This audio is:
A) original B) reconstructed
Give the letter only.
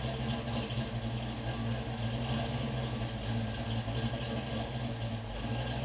A